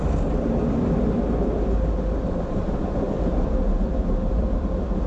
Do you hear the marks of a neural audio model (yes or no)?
no